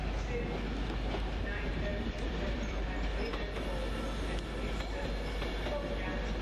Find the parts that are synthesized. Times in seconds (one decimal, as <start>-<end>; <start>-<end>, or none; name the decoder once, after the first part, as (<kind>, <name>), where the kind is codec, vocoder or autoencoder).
1.9-3.3 (vocoder, BigVGAN v2)